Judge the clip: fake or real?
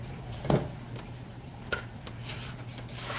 real